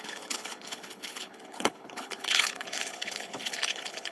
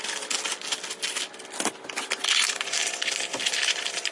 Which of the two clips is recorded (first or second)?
second